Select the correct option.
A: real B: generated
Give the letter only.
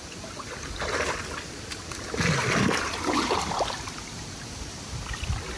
A